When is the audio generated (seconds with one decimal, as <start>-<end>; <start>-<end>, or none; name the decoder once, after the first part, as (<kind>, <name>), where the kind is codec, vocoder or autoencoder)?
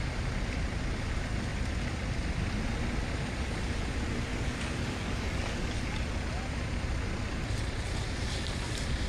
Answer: 4.3-5.8 (codec, DAC)